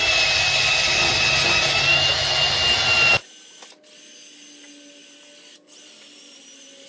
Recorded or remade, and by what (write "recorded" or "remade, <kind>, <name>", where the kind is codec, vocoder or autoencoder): recorded